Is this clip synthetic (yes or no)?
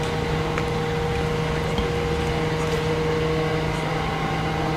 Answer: no